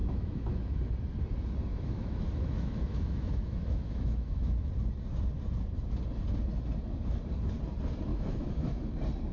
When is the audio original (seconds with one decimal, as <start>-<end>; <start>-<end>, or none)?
0.8-1.7; 4.7-8.1; 8.7-9.3